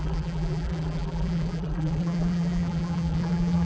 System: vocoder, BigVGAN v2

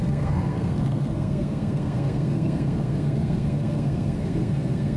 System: codec, SNAC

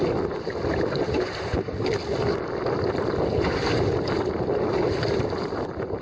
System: none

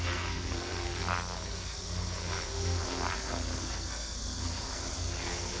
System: codec, SNAC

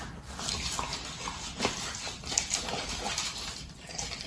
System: none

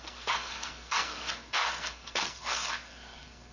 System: codec, SNAC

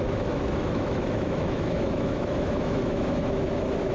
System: autoencoder, DAC-VAE